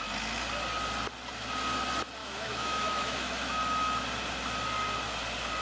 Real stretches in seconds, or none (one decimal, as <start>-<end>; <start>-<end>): 0.0-2.2; 3.6-5.6